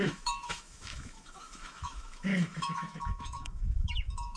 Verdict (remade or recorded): remade